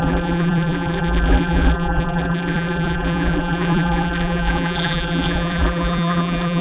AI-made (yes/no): yes